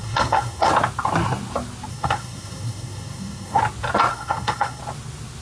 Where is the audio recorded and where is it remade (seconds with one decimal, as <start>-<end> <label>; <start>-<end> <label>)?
0.0-0.7 remade; 0.7-1.9 recorded; 1.9-3.6 remade; 3.6-4.1 recorded; 4.1-4.8 remade; 4.8-5.4 recorded